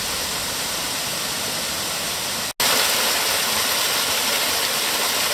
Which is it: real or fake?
real